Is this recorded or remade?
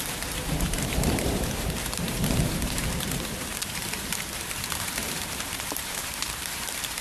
remade